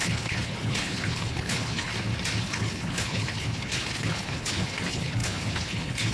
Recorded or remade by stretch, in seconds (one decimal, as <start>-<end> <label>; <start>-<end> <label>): 0.0-1.9 remade; 1.9-2.4 recorded; 2.4-6.1 remade